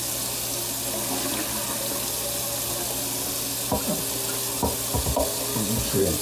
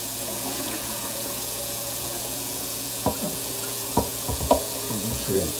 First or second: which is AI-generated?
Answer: second